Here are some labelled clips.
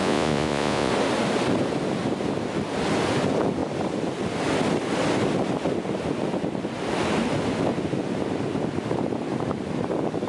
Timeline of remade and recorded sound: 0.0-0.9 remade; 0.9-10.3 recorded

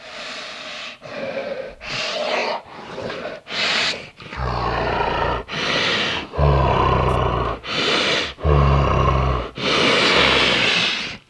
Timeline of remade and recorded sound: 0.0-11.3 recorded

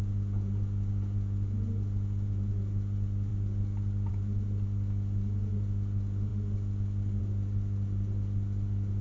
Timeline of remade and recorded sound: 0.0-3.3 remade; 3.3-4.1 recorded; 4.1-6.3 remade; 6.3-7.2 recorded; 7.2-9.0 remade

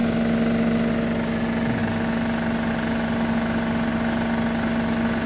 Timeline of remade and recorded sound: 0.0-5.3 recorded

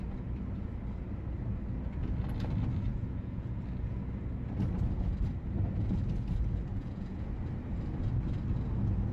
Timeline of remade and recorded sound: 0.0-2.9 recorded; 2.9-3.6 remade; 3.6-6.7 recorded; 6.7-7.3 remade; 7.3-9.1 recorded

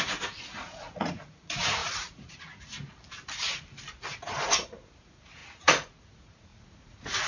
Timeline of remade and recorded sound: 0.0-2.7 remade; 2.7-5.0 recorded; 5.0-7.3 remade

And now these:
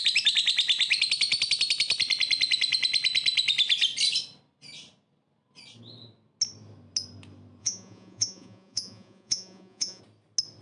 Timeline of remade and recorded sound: 0.0-7.6 recorded; 7.6-10.0 remade; 10.0-10.6 recorded

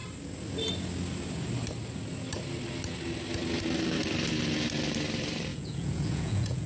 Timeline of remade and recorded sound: 0.0-5.5 recorded; 5.5-6.7 remade